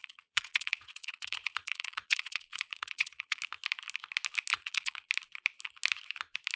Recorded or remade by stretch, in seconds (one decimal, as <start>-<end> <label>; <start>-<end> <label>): 0.0-3.4 remade; 3.4-4.5 recorded; 4.5-5.1 remade; 5.1-6.6 recorded